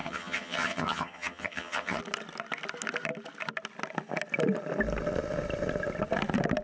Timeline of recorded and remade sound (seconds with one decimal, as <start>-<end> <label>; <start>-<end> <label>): 0.0-2.0 remade; 2.0-6.6 recorded